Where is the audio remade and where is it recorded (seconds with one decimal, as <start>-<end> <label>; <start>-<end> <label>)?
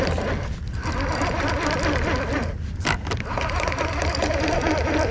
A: 0.0-5.1 recorded